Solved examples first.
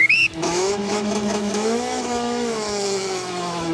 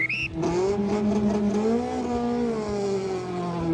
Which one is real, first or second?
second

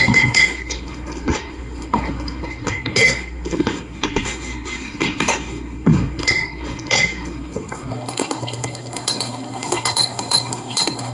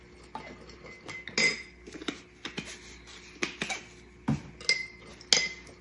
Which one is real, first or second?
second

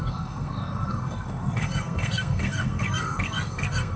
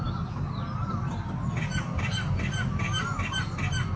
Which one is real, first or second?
second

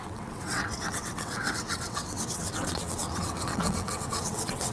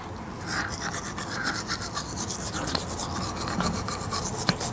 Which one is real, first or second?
second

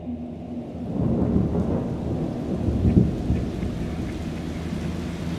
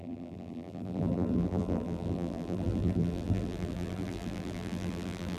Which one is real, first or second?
first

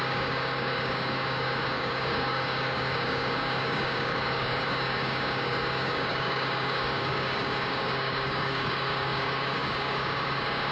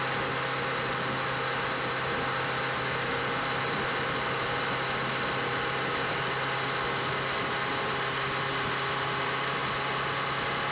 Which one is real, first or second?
second